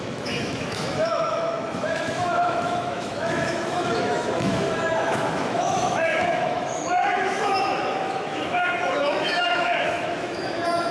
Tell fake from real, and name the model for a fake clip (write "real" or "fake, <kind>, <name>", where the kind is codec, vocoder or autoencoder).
fake, autoencoder, DAC-VAE